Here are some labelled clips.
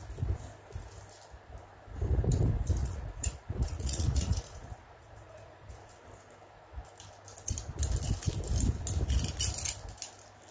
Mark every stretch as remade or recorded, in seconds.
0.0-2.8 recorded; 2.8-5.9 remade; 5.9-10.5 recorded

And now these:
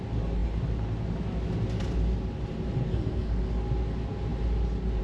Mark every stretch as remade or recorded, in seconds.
0.0-2.8 recorded; 2.8-3.4 remade; 3.4-5.0 recorded

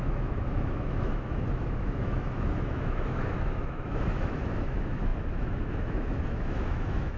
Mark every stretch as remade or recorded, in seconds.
0.0-7.2 remade

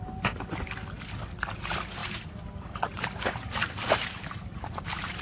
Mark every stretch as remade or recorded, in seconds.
0.0-2.0 recorded; 2.0-5.2 remade

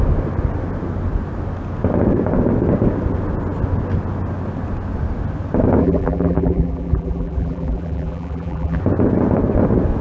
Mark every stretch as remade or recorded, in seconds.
0.0-5.8 recorded; 5.8-8.8 remade; 8.8-10.0 recorded

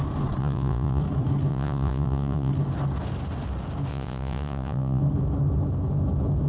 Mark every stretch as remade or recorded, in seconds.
0.0-0.4 recorded; 0.4-1.0 remade; 1.0-1.5 recorded; 1.5-2.5 remade; 2.5-3.9 recorded; 3.9-5.0 remade; 5.0-6.5 recorded

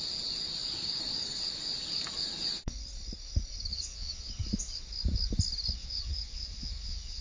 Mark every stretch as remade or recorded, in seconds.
0.0-3.7 recorded; 3.7-4.3 remade; 4.3-5.8 recorded; 5.8-7.2 remade

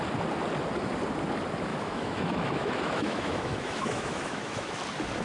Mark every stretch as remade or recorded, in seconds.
0.0-1.7 recorded; 1.7-4.8 remade; 4.8-5.2 recorded